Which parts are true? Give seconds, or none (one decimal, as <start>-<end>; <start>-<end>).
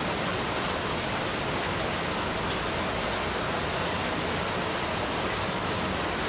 0.0-6.3